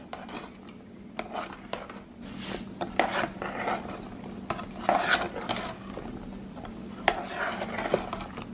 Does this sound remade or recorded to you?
recorded